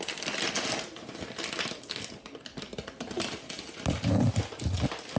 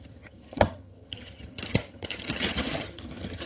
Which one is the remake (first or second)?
second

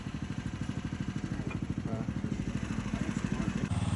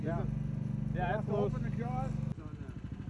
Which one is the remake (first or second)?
first